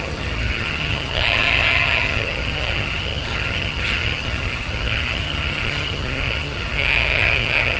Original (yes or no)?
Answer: no